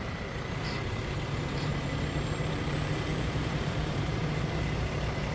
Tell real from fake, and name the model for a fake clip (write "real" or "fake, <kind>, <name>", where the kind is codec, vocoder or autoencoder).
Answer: fake, vocoder, BigVGAN v2